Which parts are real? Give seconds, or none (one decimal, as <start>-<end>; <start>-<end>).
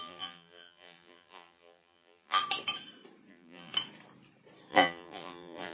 2.4-3.3; 3.7-4.7